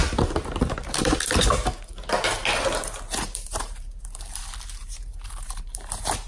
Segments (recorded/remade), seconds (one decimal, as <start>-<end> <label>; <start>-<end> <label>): 0.0-6.3 remade